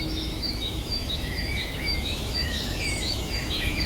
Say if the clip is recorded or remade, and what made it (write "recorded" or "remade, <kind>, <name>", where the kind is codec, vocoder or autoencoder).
remade, autoencoder, DAC-VAE